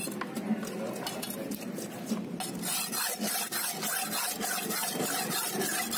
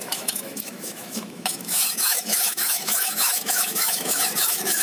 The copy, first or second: second